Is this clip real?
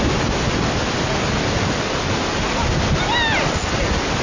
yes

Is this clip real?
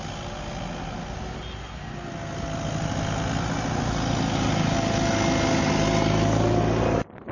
yes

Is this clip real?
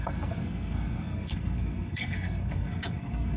no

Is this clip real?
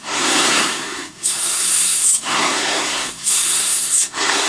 no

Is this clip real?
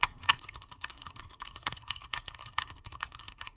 no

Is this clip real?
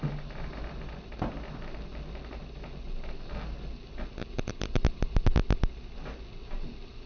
yes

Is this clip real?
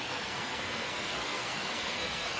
no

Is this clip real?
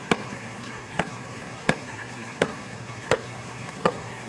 no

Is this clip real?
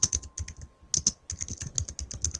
yes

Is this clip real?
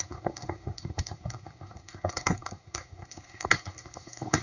no